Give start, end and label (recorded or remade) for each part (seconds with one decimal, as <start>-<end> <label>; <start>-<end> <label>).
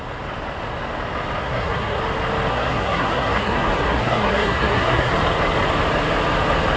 0.0-1.4 recorded; 1.4-2.0 remade; 2.0-2.5 recorded; 2.5-5.1 remade; 5.1-6.8 recorded